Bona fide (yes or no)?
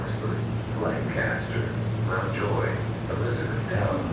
yes